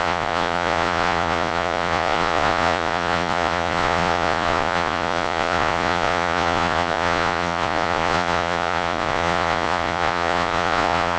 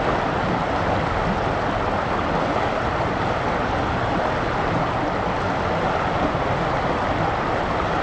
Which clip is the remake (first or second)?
first